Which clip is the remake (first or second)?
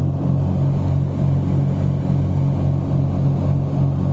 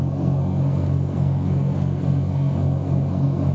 second